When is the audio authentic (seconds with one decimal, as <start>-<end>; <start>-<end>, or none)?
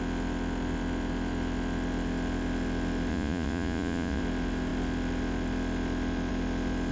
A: 0.0-3.1; 4.2-6.9